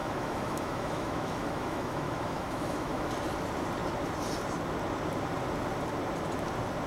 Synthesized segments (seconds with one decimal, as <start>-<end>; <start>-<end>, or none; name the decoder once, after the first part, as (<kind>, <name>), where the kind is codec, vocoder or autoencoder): 0.0-3.1 (autoencoder, DAC-VAE)